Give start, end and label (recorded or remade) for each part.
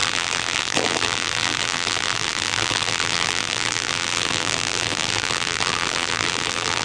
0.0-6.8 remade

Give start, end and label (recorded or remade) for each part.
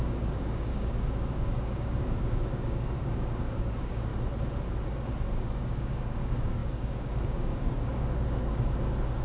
0.0-4.1 remade; 4.1-5.3 recorded; 5.3-9.2 remade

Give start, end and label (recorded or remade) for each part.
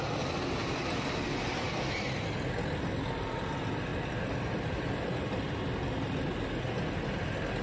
0.0-7.6 recorded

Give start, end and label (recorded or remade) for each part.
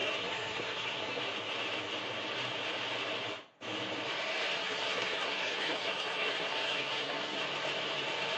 0.0-1.2 remade; 1.2-4.6 recorded; 4.6-7.4 remade; 7.4-8.4 recorded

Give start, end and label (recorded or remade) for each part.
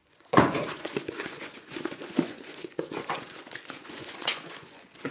0.0-5.1 remade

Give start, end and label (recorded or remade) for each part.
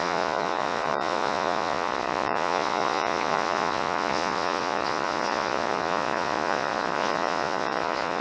0.0-8.2 remade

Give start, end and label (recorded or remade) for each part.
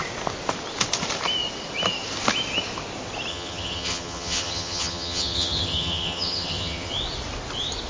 0.0-3.3 recorded; 3.3-6.9 remade; 6.9-7.9 recorded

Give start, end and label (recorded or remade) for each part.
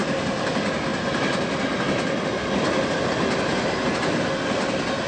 0.0-5.1 recorded